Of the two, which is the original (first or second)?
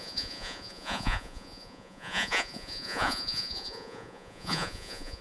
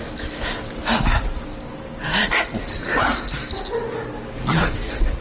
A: second